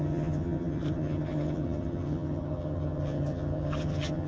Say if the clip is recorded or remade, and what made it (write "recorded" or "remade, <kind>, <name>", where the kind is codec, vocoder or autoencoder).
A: remade, vocoder, HiFi-GAN